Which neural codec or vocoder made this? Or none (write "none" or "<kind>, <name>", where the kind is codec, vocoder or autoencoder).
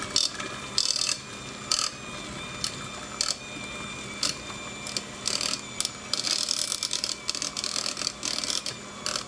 none